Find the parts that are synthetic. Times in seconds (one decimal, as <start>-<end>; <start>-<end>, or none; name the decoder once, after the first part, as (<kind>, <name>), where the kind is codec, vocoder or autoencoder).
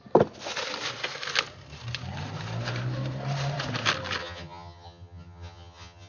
4.2-6.1 (vocoder, HiFi-GAN)